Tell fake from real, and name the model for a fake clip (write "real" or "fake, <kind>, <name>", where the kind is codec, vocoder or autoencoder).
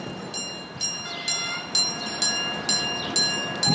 real